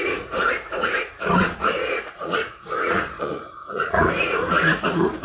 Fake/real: fake